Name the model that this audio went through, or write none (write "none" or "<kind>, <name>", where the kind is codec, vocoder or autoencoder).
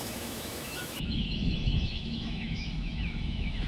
autoencoder, DAC-VAE